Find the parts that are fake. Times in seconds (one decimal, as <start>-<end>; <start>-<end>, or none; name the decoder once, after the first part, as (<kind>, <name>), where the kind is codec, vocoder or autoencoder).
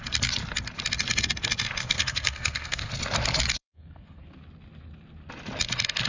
1.8-2.9 (codec, SNAC); 3.6-4.2